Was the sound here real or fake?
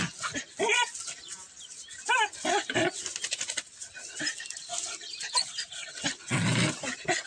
real